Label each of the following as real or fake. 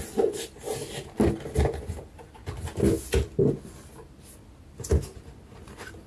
real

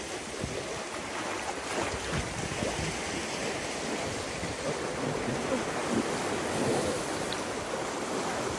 real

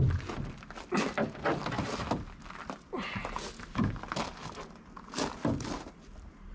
real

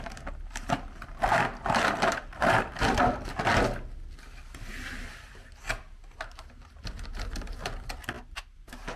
real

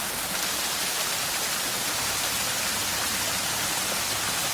real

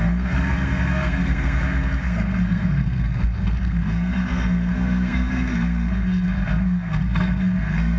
fake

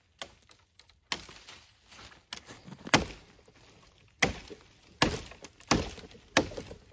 real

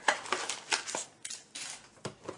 real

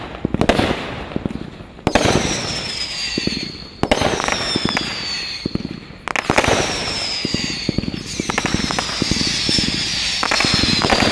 real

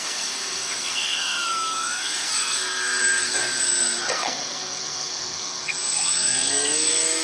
fake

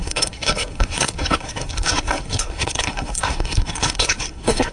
fake